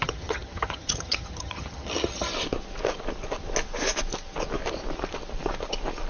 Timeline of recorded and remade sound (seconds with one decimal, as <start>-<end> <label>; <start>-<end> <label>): 0.0-2.3 remade; 2.3-6.1 recorded